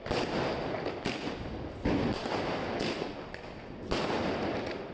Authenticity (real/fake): real